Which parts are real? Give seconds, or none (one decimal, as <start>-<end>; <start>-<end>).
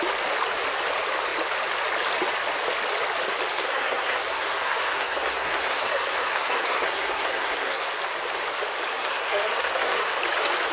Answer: 0.0-3.5; 7.9-8.9; 10.2-10.7